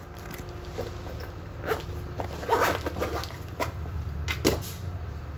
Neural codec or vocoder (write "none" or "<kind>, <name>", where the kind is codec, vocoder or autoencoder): none